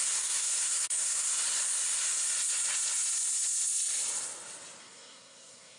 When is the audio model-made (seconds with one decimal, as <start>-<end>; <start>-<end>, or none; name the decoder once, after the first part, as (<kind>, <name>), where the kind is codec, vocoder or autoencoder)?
0.0-1.3 (codec, SNAC); 4.8-5.8